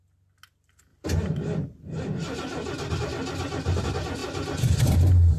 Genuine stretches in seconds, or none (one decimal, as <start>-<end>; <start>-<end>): 0.0-5.4